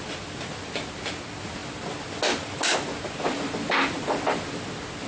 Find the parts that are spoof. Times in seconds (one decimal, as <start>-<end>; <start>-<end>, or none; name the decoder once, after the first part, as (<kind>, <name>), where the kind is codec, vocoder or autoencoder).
none